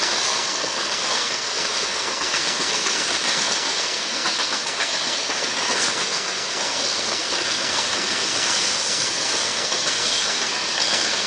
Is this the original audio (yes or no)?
no